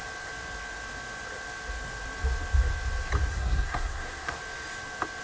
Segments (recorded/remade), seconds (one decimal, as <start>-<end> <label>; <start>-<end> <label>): 0.0-3.3 recorded; 3.3-4.4 remade; 4.4-5.2 recorded